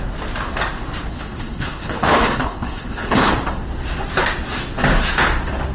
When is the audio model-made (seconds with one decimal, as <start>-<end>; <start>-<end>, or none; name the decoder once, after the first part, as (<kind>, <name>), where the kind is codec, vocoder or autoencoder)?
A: 1.1-3.3 (codec, HILCodec)